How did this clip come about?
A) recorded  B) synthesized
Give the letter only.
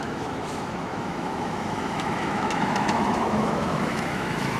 B